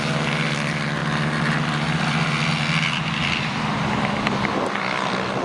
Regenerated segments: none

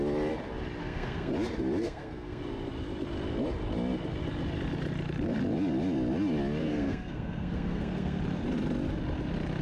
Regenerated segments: 0.8-1.3 (codec, SNAC); 1.8-2.4; 6.6-8.2

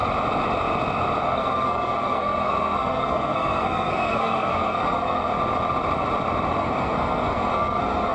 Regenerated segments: 1.2-5.3 (codec, SNAC); 6.6-8.1